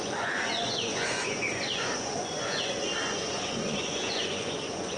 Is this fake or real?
fake